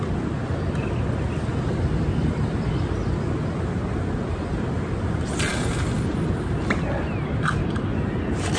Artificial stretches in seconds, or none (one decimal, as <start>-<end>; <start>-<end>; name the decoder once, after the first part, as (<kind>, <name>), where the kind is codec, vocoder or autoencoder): none